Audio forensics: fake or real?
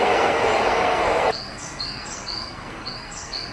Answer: fake